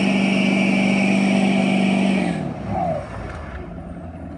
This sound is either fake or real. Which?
real